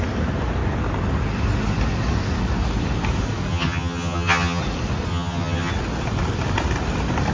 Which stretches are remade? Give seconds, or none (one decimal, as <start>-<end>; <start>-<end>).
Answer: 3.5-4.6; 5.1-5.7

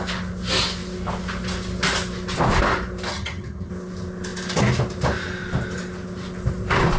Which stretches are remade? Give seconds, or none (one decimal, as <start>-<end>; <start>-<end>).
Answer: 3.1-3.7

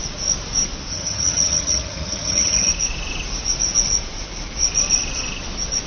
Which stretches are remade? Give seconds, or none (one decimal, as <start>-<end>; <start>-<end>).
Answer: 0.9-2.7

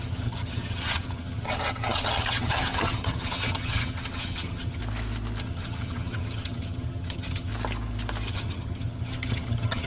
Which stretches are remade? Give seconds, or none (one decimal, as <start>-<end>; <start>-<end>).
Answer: 0.0-4.8; 5.4-7.5; 8.3-9.9

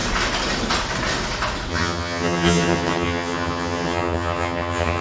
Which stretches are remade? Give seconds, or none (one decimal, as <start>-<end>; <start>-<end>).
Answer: 1.7-5.0

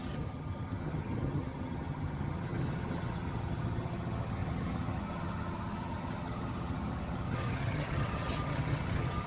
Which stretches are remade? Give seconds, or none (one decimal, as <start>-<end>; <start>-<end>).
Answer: 0.0-9.3